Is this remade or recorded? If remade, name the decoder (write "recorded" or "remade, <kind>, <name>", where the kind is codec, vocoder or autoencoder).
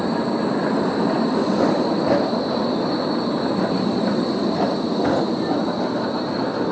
recorded